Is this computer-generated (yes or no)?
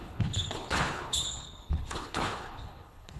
yes